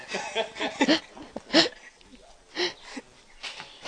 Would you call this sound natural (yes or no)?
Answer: yes